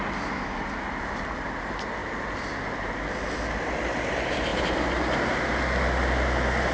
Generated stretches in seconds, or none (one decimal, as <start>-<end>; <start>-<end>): none